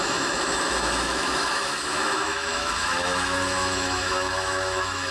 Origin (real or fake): fake